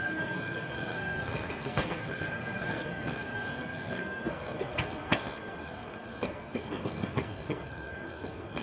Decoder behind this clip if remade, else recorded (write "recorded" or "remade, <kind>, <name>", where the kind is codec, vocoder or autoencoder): remade, codec, SNAC